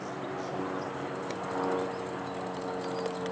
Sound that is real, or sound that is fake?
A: real